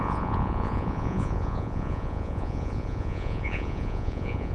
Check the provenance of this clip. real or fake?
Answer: fake